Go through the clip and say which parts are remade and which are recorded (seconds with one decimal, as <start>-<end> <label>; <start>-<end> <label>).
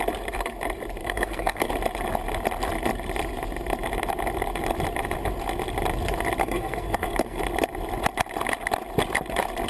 0.0-1.0 recorded; 1.0-1.7 remade; 1.7-6.4 recorded; 6.4-7.4 remade; 7.4-9.7 recorded